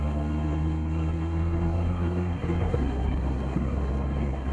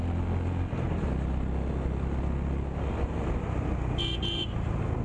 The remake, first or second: first